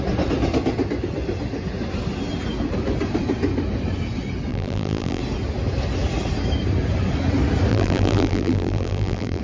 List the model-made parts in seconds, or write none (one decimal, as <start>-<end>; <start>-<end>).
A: 4.5-5.2; 7.7-9.4